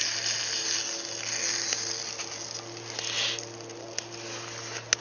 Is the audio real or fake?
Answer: real